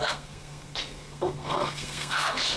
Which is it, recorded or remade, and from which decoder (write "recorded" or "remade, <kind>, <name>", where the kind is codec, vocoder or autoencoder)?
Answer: remade, codec, SNAC